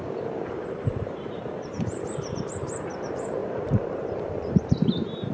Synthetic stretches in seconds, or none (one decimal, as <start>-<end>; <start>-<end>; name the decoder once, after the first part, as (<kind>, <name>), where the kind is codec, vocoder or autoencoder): 0.0-5.3 (vocoder, BigVGAN v2)